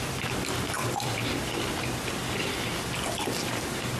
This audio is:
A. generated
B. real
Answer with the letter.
A